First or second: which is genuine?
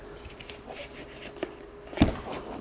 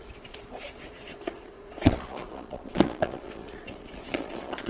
first